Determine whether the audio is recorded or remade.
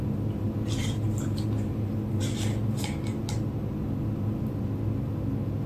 recorded